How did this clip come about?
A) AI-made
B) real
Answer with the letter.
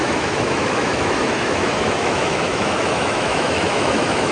A